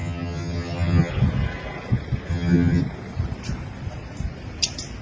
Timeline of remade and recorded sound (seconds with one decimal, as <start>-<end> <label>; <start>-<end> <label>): 0.0-1.1 remade; 1.1-2.3 recorded; 2.3-2.8 remade; 2.8-5.0 recorded